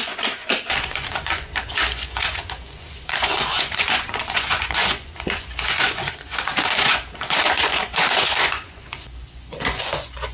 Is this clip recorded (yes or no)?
no